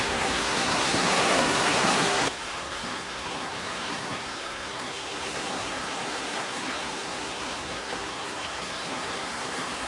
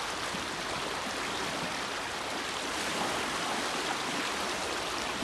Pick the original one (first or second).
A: second